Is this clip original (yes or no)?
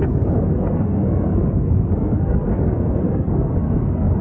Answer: no